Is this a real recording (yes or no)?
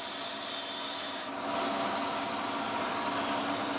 yes